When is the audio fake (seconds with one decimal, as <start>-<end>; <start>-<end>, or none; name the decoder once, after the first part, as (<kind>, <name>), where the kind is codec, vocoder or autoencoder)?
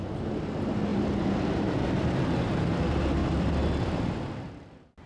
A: 0.9-2.5 (vocoder, BigVGAN v2); 3.2-4.5